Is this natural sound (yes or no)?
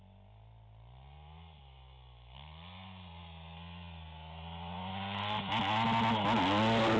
yes